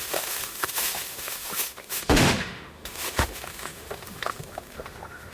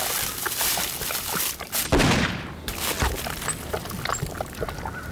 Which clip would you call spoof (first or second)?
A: first